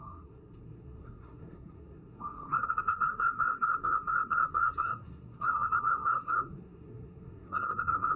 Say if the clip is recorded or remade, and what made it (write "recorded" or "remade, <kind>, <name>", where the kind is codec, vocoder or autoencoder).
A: remade, codec, SNAC